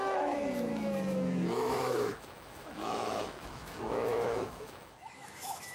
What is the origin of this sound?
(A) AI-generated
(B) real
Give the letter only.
A